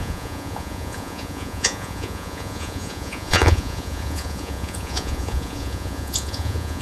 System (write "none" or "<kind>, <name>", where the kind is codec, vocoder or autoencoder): vocoder, Vocos